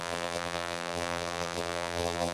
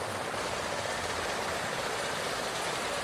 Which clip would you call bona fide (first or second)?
second